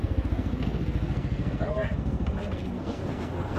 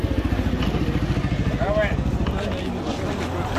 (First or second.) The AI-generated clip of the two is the first